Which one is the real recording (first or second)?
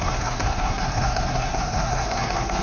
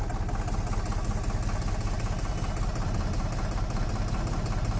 second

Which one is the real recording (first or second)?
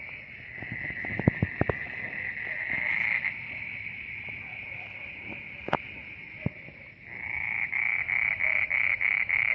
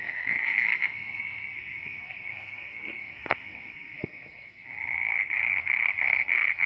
first